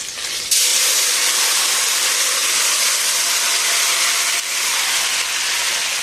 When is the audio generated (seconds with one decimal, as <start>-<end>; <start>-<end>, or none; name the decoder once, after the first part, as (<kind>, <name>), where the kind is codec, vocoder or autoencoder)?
0.7-1.4 (vocoder, BigVGAN v2)